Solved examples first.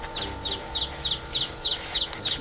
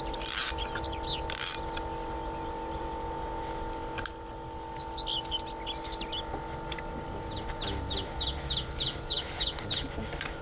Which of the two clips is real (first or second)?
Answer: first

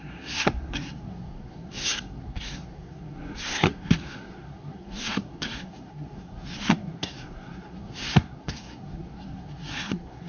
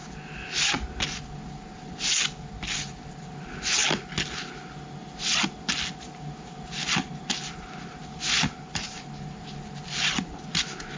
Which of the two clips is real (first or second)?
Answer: second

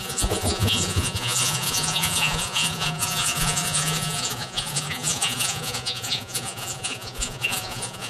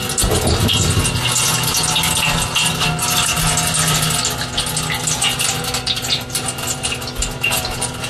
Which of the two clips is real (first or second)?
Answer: second